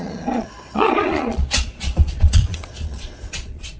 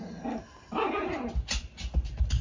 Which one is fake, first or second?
first